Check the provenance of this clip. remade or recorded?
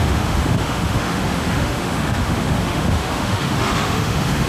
remade